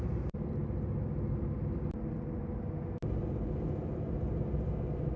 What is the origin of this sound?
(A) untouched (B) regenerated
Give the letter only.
A